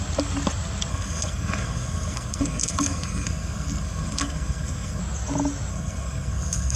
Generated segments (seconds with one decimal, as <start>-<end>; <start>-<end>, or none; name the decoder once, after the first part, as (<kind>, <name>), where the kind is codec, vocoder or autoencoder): 0.9-5.0 (codec, SNAC); 5.7-6.8